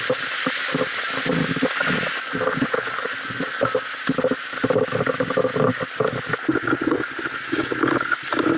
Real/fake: real